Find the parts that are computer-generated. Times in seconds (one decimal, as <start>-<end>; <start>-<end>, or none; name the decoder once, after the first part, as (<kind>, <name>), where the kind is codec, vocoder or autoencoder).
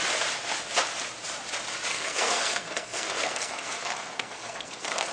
1.9-5.1 (codec, SNAC)